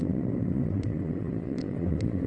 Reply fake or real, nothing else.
fake